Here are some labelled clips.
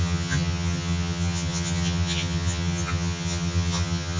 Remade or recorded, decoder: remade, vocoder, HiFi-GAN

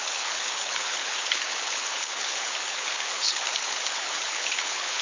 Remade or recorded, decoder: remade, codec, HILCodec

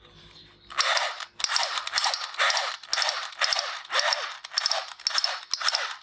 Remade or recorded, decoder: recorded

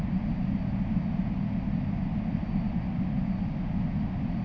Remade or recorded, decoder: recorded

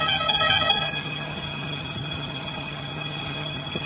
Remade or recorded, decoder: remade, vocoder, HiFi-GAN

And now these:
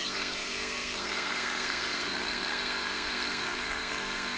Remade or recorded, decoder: remade, codec, SNAC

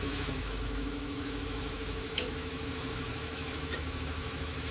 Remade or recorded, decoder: remade, autoencoder, DAC-VAE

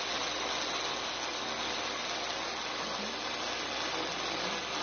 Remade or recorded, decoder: recorded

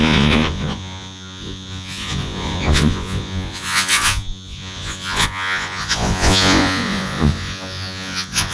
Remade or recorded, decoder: remade, vocoder, Vocos